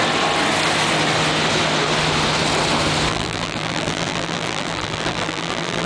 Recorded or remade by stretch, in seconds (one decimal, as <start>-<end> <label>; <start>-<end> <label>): 0.0-3.1 recorded; 3.1-5.9 remade